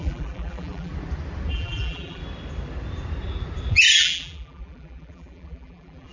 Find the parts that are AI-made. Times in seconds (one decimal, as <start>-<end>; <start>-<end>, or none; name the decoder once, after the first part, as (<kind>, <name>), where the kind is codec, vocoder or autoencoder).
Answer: 0.0-0.9 (vocoder, BigVGAN v2); 1.5-2.2; 3.7-6.1